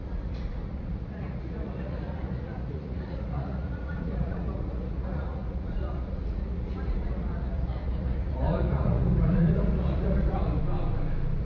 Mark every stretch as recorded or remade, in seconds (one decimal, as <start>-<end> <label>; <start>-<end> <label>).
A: 0.0-10.6 remade; 10.6-11.4 recorded